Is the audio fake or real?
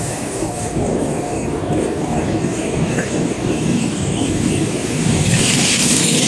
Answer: fake